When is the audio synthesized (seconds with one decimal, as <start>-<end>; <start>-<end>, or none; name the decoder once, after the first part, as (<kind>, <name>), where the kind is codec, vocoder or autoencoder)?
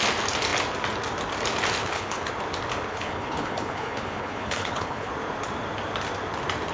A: 1.8-2.3 (codec, HILCodec); 2.9-5.1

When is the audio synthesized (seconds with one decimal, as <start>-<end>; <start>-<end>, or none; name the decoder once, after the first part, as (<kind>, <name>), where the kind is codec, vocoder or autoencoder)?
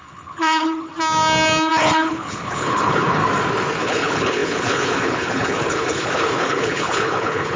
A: 0.0-0.9 (codec, HILCodec); 1.7-3.2; 3.8-7.6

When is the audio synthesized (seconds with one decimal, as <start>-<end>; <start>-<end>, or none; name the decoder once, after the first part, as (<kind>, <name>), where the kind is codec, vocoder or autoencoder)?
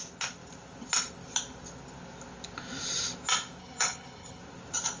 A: 3.6-4.4 (codec, HILCodec)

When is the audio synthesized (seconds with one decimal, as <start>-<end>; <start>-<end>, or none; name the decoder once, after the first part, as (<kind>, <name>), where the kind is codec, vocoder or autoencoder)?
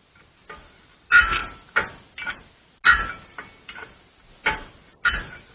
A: none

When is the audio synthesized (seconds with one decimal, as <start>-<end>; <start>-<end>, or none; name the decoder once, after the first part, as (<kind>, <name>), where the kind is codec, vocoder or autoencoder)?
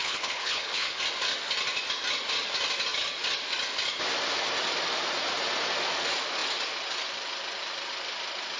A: 0.0-1.0 (codec, HILCodec)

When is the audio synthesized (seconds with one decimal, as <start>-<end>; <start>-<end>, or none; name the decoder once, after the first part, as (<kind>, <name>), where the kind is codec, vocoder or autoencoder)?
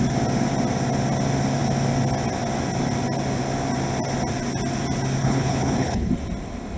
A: 5.2-6.1 (codec, HILCodec)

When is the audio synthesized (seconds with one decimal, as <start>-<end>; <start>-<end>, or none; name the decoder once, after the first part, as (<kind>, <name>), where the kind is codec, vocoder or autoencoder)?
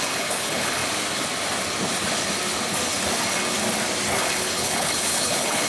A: 0.0-0.8 (codec, HILCodec); 4.2-5.7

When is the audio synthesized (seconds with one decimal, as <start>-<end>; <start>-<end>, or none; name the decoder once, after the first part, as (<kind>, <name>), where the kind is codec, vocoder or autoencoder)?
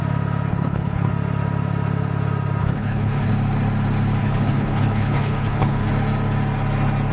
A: 0.5-1.1 (codec, HILCodec); 2.6-3.3; 4.2-5.9